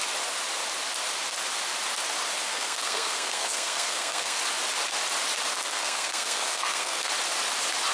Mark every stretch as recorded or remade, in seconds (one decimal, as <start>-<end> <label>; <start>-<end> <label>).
0.0-2.5 recorded; 2.5-4.4 remade; 4.4-5.5 recorded; 5.5-7.1 remade; 7.1-7.9 recorded